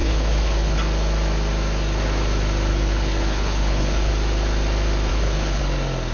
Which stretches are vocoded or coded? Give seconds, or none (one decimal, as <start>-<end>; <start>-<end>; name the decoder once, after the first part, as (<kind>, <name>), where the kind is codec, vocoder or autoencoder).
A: 0.0-0.8 (codec, HILCodec); 2.7-4.1; 5.1-5.6